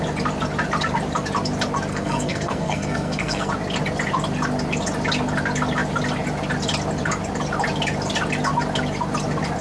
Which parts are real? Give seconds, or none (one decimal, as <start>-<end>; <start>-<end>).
0.0-1.9; 3.5-9.6